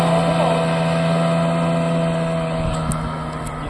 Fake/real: real